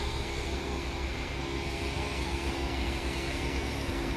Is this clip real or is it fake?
fake